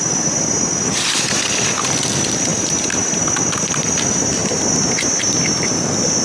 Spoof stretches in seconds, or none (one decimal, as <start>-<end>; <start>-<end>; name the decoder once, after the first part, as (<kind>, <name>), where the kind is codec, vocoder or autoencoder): 2.5-3.3 (vocoder, BigVGAN v2)